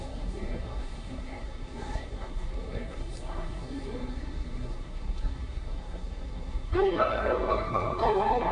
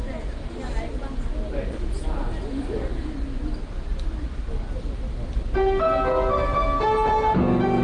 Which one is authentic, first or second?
second